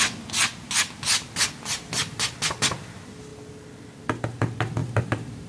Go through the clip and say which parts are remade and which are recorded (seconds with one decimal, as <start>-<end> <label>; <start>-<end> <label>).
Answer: 0.0-4.8 recorded; 4.8-5.5 remade